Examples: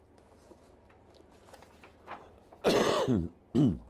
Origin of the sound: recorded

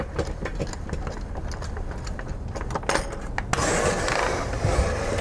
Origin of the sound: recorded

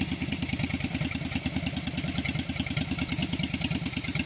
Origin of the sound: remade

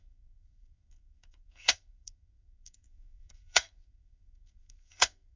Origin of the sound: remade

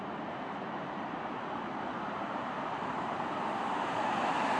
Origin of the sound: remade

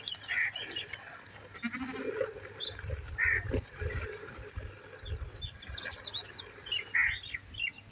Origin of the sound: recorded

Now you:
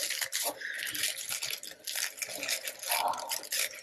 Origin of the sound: recorded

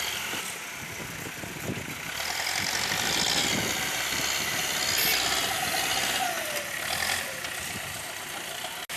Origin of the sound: recorded